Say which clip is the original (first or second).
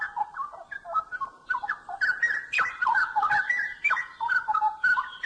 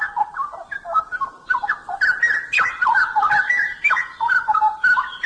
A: second